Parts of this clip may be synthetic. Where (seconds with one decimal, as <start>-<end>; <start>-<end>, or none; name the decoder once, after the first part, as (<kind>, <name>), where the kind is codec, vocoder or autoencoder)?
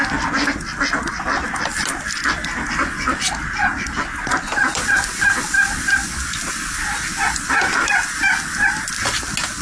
none